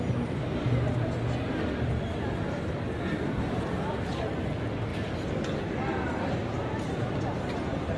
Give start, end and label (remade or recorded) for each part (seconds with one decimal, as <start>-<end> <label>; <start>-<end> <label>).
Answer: 0.0-8.0 recorded